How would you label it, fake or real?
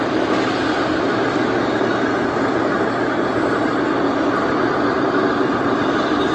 real